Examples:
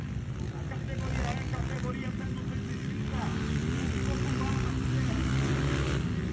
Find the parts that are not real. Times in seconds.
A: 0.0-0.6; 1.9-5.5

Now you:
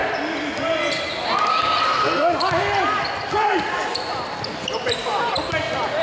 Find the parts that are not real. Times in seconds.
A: none